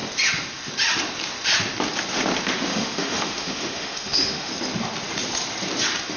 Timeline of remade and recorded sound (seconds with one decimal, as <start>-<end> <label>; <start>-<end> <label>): 0.0-2.7 recorded; 2.7-4.5 remade; 4.5-6.2 recorded